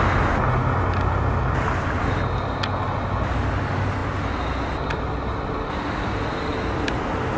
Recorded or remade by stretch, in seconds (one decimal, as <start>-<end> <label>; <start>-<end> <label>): 0.0-7.4 recorded